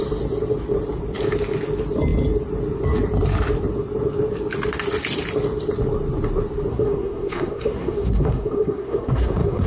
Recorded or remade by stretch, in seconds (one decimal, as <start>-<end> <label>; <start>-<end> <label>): 0.0-6.7 recorded; 6.7-9.7 remade